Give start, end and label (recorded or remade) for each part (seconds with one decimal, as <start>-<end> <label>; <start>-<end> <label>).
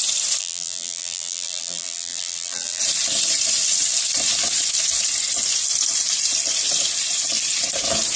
0.0-0.4 recorded; 0.4-2.8 remade; 2.8-8.2 recorded